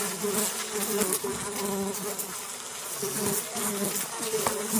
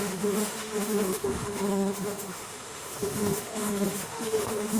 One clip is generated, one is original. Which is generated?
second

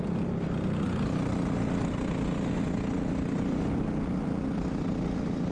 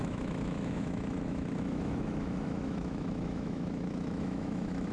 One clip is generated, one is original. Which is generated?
second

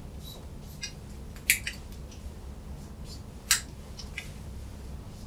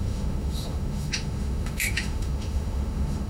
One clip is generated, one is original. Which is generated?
second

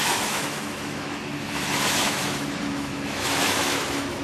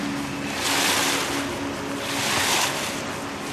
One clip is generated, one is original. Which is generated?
first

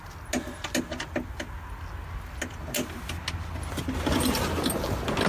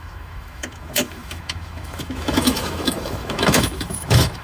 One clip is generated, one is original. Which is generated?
second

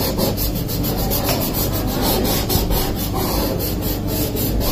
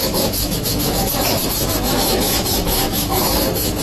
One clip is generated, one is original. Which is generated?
second